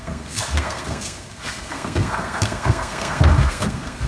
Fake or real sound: fake